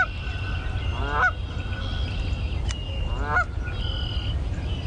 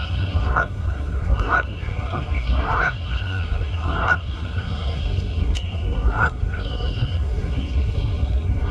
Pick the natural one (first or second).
first